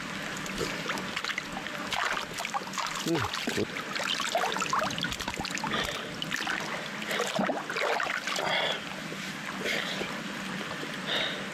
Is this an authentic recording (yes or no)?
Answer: yes